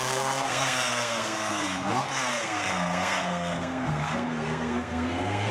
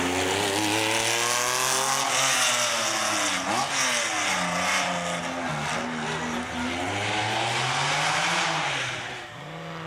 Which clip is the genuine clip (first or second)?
second